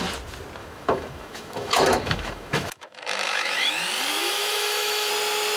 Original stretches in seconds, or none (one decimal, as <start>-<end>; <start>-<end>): 0.0-0.6; 3.7-4.2; 5.1-5.6